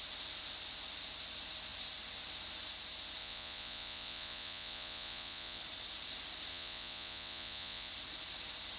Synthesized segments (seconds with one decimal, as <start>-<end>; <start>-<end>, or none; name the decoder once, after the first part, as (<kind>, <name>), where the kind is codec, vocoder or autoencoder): 3.2-5.6 (vocoder, Vocos); 6.5-7.9